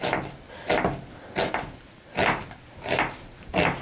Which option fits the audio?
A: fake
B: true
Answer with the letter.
B